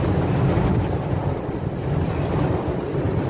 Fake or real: real